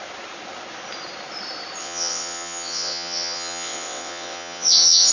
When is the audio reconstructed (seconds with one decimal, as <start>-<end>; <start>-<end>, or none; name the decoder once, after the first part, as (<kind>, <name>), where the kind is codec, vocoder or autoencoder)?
1.8-5.1 (vocoder, WaveNeXt)